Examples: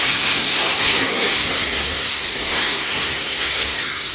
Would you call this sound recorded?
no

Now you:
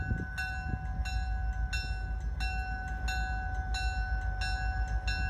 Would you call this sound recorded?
yes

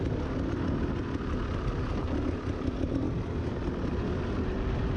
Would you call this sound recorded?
yes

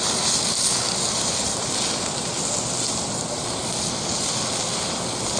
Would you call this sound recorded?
yes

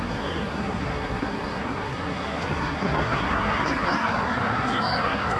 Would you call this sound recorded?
no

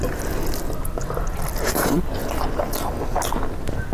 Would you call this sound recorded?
yes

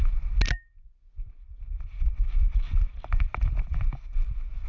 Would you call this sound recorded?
yes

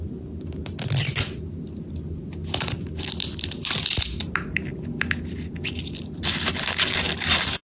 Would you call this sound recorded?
yes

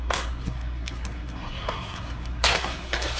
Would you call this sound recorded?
no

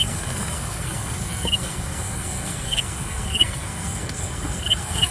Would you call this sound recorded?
no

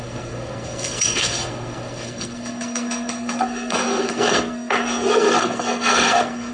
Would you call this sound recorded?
no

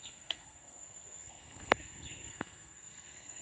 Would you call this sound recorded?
no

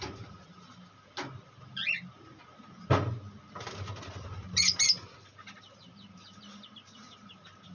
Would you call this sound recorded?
yes